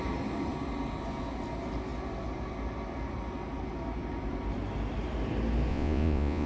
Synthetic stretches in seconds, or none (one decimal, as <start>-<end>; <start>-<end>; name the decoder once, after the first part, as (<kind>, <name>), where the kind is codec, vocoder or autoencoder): 5.7-6.5 (vocoder, Vocos)